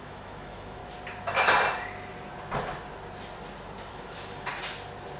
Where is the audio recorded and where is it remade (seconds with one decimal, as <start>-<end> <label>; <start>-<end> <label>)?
0.0-0.8 remade; 0.8-3.9 recorded; 3.9-4.5 remade; 4.5-5.2 recorded